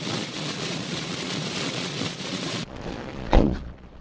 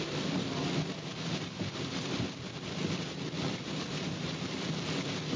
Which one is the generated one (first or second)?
first